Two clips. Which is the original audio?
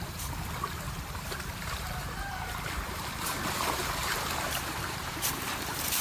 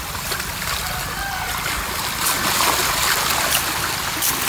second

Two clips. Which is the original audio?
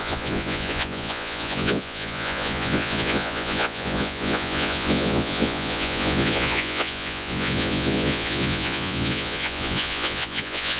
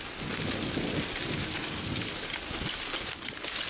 second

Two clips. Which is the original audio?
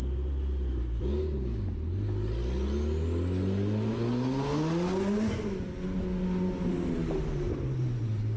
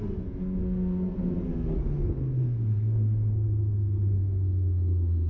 first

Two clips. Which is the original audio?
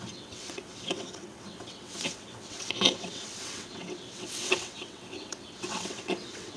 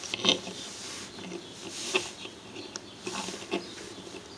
second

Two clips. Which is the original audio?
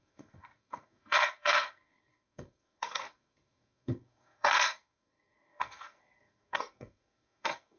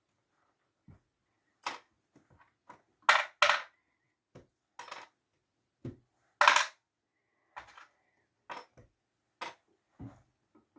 second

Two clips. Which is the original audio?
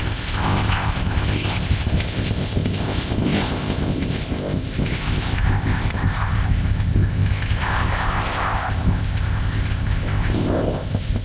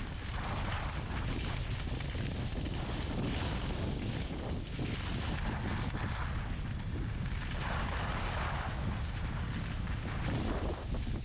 second